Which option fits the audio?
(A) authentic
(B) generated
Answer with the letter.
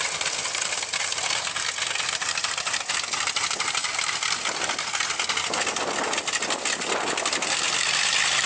A